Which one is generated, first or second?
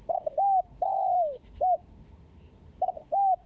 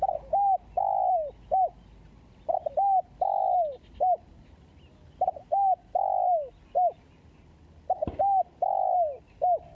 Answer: first